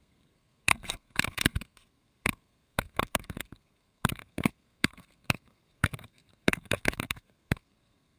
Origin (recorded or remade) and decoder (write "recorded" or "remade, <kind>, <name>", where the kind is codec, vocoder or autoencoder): remade, codec, SNAC